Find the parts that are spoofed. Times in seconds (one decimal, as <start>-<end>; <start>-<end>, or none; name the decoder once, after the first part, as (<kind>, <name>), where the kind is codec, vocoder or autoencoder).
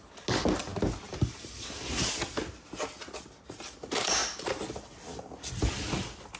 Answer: none